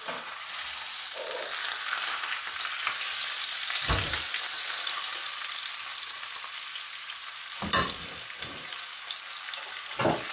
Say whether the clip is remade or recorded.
recorded